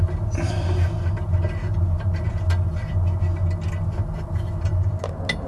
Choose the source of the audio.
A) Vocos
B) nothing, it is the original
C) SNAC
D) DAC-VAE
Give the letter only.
B